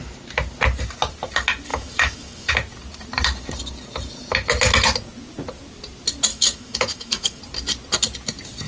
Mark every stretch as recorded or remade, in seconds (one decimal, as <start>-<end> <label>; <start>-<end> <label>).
0.0-1.7 recorded; 1.7-2.5 remade; 2.5-6.3 recorded; 6.3-7.4 remade; 7.4-8.7 recorded